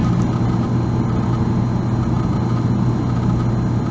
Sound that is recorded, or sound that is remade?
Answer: recorded